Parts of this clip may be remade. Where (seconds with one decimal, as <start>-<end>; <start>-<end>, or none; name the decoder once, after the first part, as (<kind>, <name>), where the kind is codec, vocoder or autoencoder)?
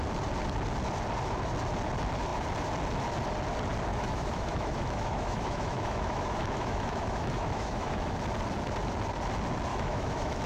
3.9-8.2 (autoencoder, DAC-VAE); 9.7-10.5